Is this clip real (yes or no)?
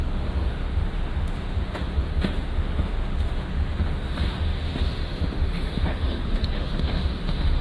no